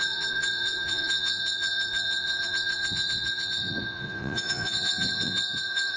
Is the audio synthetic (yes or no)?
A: yes